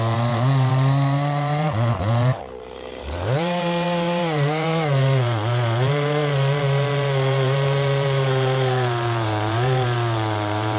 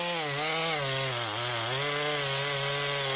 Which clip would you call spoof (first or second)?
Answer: first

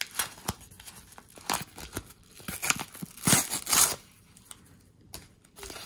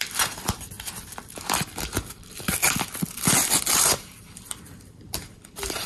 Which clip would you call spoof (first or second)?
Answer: second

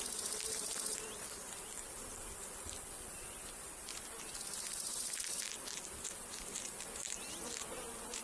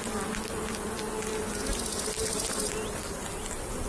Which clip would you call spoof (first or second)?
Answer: first